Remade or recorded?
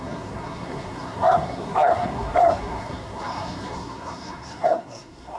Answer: remade